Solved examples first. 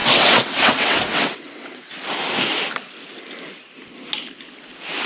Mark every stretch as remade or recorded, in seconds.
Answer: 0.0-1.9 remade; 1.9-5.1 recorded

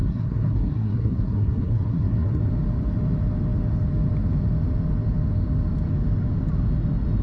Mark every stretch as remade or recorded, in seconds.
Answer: 0.0-2.4 remade; 2.4-7.2 recorded

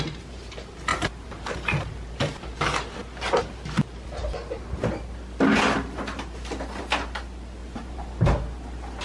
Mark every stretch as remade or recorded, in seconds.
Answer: 0.0-0.9 recorded; 0.9-2.2 remade; 2.2-7.6 recorded; 7.6-8.2 remade; 8.2-9.0 recorded

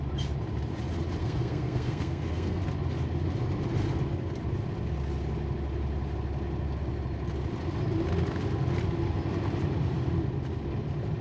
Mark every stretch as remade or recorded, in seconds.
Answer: 0.0-1.2 recorded; 1.2-2.6 remade; 2.6-11.2 recorded